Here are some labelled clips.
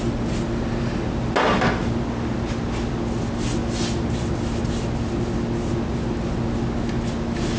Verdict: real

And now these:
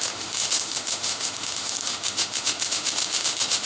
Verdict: fake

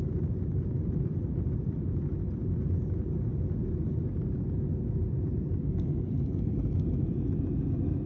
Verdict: real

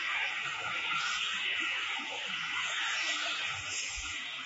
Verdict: fake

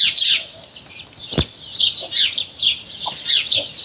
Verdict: real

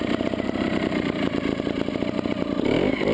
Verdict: fake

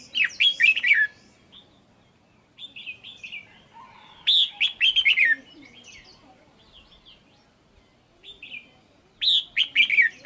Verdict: real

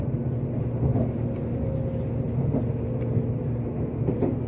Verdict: real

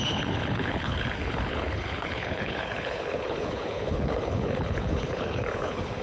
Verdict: fake